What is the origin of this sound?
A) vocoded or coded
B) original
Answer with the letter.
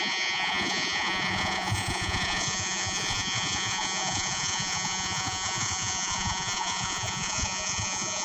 A